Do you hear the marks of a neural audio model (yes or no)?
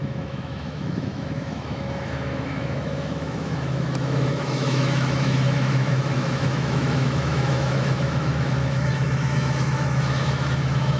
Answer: yes